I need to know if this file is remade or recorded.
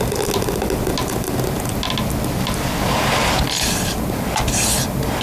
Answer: recorded